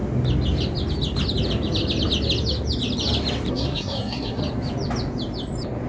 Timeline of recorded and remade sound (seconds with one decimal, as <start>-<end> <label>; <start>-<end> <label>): 0.0-3.5 recorded; 3.5-4.4 remade; 4.4-5.9 recorded